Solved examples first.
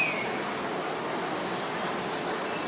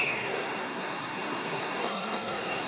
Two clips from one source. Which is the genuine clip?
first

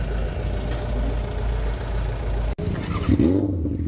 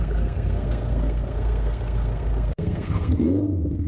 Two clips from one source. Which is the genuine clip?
first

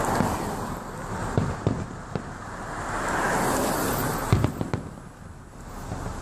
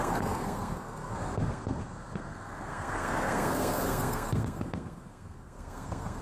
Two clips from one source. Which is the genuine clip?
first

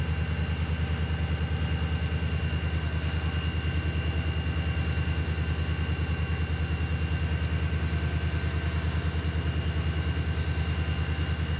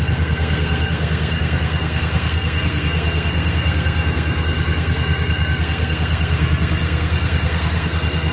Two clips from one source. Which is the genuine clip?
first